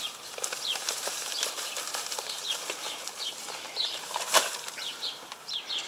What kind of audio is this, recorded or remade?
remade